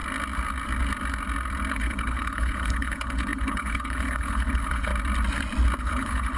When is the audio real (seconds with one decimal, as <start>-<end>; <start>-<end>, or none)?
0.0-1.7; 4.9-5.8